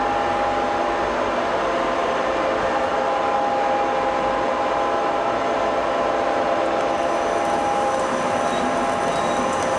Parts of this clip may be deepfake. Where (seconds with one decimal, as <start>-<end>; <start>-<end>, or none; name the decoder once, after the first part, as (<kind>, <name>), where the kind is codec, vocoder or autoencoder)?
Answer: none